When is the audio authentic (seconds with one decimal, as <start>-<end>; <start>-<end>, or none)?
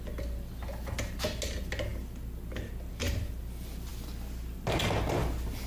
0.0-5.7